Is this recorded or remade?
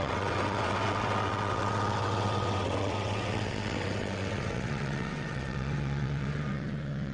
remade